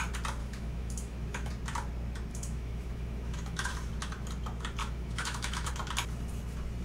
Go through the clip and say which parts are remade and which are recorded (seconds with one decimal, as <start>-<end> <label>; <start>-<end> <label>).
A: 0.0-0.4 recorded; 0.4-1.5 remade; 1.5-2.3 recorded; 2.3-3.7 remade; 3.7-4.8 recorded; 4.8-5.7 remade; 5.7-6.8 recorded